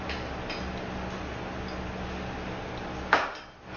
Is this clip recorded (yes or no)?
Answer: yes